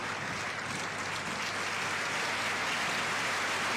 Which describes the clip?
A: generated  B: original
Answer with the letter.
B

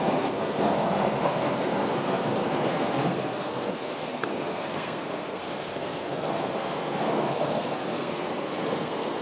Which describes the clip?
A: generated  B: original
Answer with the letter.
A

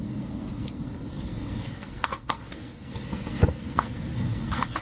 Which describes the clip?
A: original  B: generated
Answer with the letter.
B